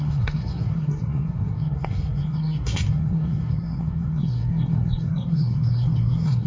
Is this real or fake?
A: fake